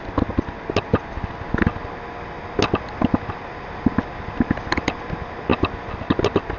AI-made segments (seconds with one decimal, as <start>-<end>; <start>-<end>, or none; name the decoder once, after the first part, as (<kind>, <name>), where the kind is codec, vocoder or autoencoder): none